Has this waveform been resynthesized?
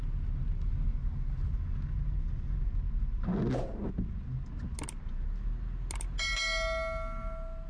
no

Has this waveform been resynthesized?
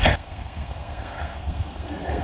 yes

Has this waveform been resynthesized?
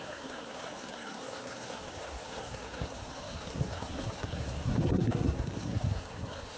yes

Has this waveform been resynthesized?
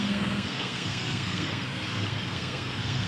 yes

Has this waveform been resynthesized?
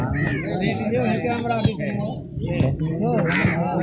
no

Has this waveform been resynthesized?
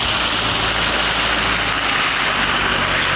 no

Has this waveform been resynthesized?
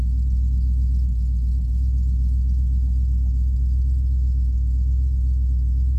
no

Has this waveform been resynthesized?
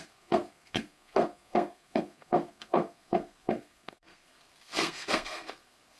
yes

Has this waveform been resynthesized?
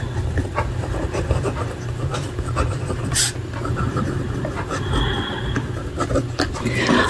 no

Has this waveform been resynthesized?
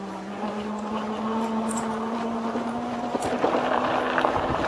no